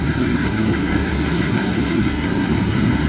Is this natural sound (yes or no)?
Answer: no